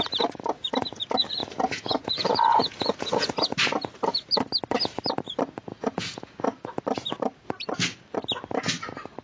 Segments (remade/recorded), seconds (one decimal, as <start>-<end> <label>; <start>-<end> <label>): 0.0-1.4 recorded; 1.4-3.3 remade; 3.3-5.6 recorded; 5.6-6.7 remade; 6.7-9.2 recorded